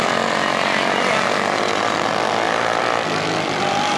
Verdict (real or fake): real